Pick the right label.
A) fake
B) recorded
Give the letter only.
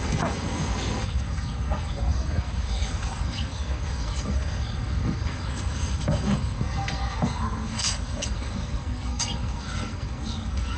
A